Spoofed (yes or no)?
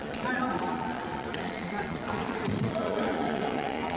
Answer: yes